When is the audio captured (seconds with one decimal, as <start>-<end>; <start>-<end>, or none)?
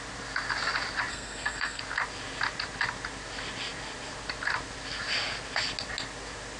0.0-1.1; 1.8-6.6